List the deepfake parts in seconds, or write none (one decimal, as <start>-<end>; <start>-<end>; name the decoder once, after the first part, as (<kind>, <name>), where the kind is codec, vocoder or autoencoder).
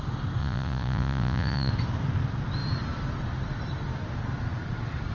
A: 0.4-1.7 (vocoder, Vocos)